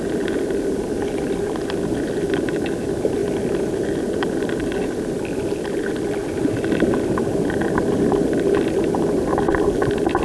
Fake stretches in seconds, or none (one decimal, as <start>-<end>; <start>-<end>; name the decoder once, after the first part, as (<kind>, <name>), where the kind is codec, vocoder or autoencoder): none